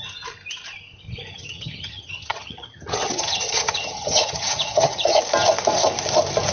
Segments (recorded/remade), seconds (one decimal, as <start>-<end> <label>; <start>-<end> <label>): 0.0-1.3 recorded; 1.3-5.2 remade; 5.2-6.5 recorded